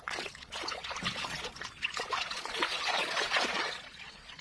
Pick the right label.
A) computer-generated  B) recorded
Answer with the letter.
A